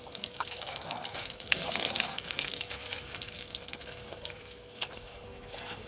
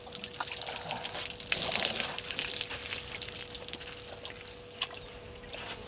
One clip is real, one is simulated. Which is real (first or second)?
second